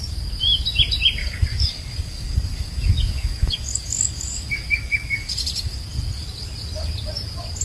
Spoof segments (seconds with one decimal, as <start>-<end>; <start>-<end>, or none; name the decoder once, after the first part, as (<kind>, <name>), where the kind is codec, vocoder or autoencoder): 1.2-5.8 (codec, DAC)